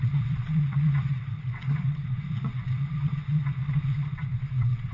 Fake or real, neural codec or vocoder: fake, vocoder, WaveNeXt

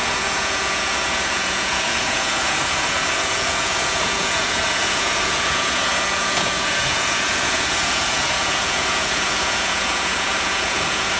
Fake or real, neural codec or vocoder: fake, vocoder, Vocos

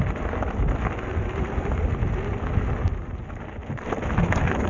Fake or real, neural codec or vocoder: real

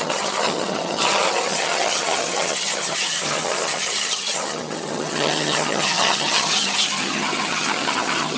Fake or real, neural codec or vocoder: fake, vocoder, HiFi-GAN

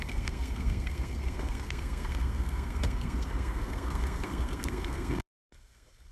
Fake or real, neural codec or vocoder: fake, codec, SNAC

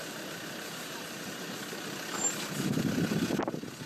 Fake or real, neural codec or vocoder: real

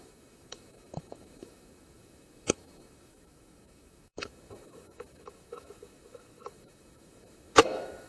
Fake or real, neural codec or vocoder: fake, autoencoder, DAC-VAE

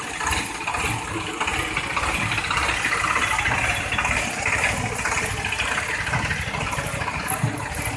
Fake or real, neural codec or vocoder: real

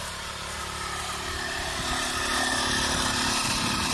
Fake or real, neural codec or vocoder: fake, vocoder, BigVGAN v2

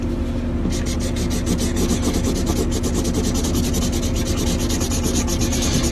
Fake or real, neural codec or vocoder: real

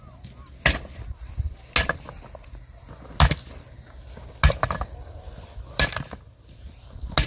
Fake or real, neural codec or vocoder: real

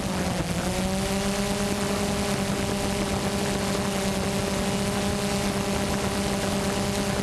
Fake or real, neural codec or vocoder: real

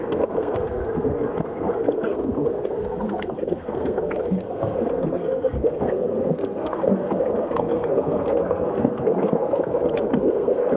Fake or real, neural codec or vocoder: fake, codec, SNAC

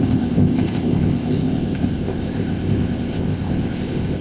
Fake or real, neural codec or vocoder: fake, codec, ZipCodec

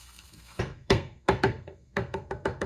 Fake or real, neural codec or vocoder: fake, codec, SNAC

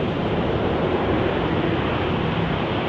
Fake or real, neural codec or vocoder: fake, vocoder, BigVGAN v2